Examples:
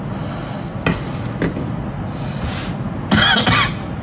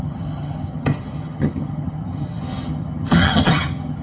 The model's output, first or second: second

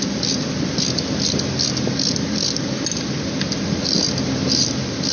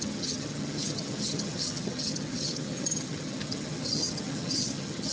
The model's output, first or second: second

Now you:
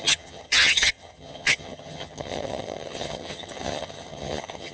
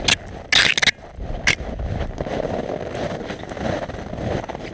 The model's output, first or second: first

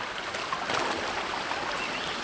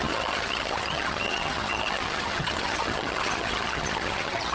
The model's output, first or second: second